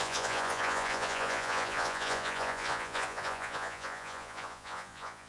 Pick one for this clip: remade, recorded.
remade